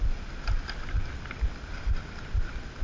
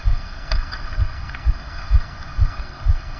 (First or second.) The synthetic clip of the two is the second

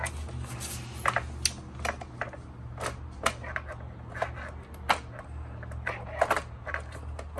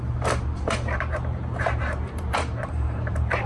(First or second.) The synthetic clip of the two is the second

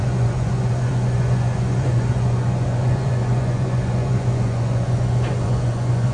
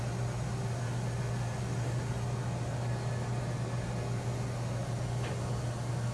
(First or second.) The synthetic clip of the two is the first